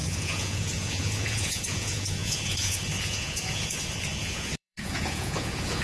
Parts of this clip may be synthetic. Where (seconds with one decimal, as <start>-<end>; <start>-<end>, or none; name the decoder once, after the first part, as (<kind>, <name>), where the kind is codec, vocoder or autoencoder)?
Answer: 0.0-5.8 (vocoder, Vocos)